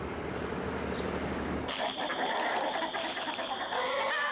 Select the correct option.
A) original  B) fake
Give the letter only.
A